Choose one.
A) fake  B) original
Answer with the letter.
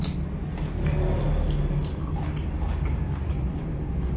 B